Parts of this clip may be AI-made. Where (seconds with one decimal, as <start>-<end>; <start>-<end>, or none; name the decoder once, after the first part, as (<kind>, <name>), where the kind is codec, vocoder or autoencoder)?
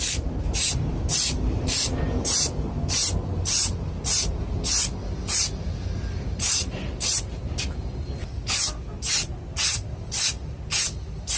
none